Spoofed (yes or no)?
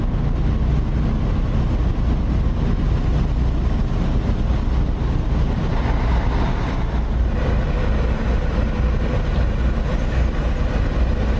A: no